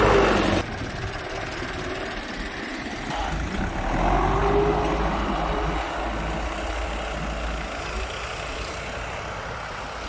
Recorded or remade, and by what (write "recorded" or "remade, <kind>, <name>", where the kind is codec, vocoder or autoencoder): recorded